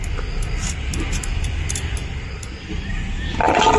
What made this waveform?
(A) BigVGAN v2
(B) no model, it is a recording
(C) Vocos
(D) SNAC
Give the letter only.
B